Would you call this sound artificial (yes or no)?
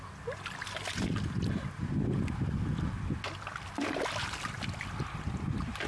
no